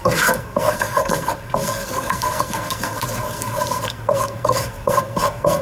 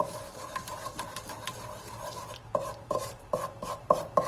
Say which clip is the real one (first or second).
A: second